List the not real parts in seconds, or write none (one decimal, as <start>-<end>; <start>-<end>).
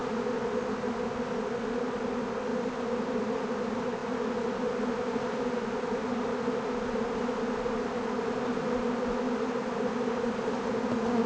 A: none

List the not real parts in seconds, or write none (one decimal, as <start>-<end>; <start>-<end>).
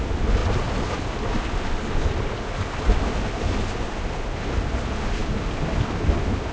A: none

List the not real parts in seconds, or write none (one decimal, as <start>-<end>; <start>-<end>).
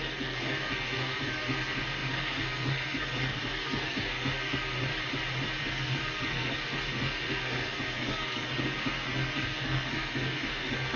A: 0.0-4.9; 5.6-11.0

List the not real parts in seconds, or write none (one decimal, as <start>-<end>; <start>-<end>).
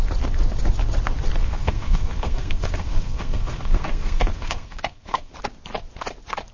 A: 1.4-5.3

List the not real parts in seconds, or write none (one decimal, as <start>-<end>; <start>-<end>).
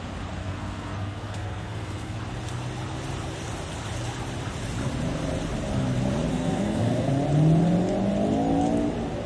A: 0.4-2.2; 6.3-7.1